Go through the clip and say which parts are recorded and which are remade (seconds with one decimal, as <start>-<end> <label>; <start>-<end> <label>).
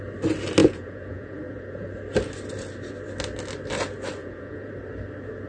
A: 0.0-0.6 recorded; 0.6-1.9 remade; 1.9-4.2 recorded; 4.2-4.7 remade; 4.7-5.5 recorded